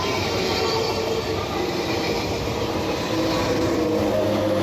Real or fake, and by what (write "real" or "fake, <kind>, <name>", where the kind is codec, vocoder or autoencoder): real